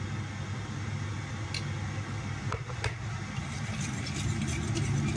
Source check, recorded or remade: recorded